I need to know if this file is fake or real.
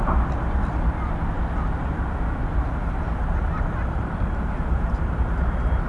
real